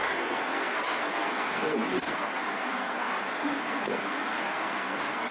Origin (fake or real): fake